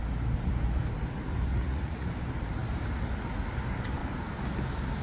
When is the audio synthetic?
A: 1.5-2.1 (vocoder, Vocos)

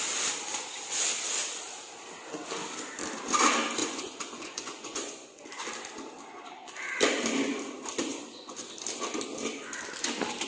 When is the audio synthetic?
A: 3.8-5.4 (vocoder, Vocos); 8.1-8.7

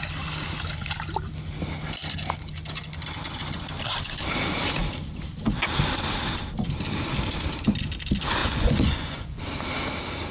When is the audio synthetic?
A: 8.4-9.4 (vocoder, Vocos)

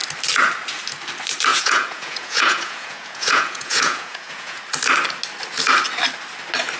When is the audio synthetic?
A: 1.5-4.6 (vocoder, Vocos)

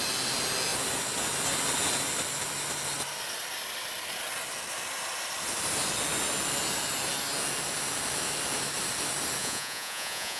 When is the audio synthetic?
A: 9.4-10.4 (vocoder, Vocos)

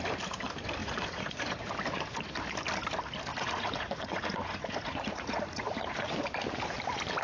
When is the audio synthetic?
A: 0.8-1.7 (vocoder, Vocos); 3.3-6.1